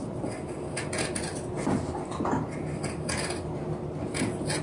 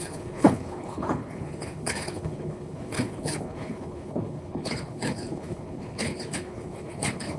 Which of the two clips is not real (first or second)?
second